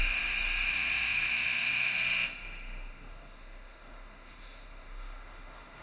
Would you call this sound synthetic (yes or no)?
yes